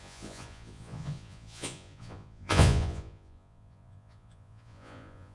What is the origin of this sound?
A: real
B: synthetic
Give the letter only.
B